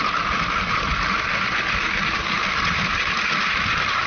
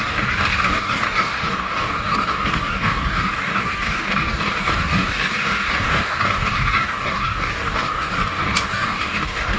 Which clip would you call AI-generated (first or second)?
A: second